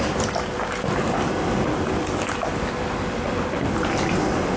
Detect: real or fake real